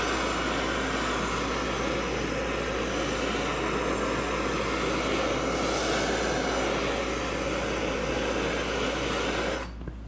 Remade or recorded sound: recorded